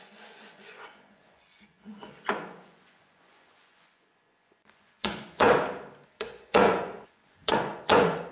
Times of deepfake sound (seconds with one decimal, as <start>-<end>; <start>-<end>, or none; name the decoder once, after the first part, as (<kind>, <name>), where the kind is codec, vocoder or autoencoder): 0.0-5.5 (vocoder, Vocos); 6.2-8.3